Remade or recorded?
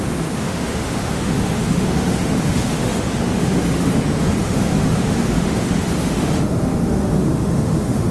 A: remade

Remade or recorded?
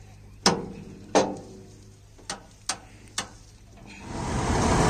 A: recorded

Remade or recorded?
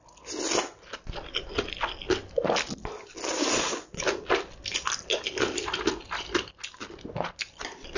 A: recorded